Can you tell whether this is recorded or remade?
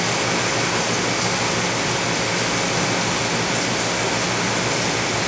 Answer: recorded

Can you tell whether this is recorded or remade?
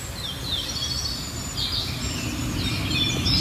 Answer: recorded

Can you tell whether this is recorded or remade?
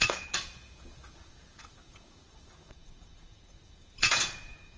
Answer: remade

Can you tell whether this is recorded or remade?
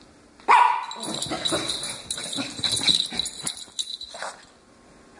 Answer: recorded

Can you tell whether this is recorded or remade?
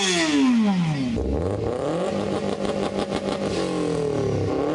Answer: recorded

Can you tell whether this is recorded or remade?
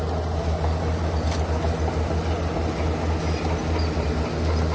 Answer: recorded